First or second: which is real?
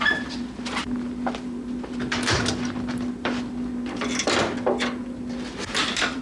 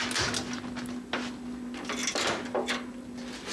second